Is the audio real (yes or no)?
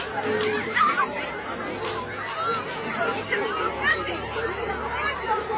yes